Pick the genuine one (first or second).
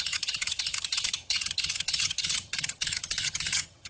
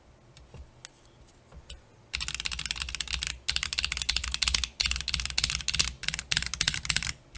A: second